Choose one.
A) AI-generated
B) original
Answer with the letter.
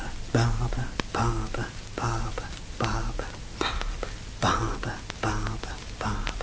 B